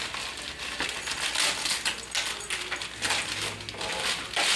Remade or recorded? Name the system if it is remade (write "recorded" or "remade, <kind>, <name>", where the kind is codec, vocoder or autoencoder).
recorded